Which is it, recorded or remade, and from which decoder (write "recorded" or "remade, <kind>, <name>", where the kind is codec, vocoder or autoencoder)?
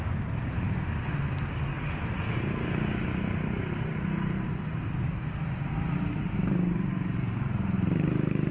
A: recorded